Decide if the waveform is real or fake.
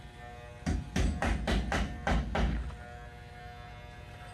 real